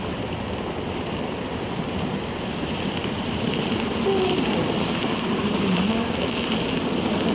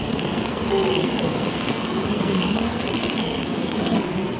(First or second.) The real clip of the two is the first